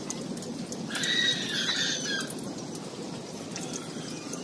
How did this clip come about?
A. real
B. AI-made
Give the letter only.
A